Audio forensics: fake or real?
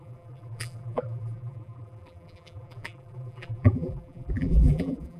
fake